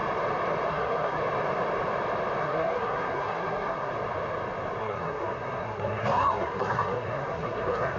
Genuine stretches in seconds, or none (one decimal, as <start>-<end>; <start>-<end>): 0.0-0.7; 1.2-2.4; 3.9-4.8